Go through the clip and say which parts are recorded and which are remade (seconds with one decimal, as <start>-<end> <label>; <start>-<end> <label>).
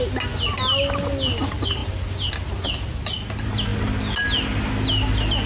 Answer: 0.0-5.5 recorded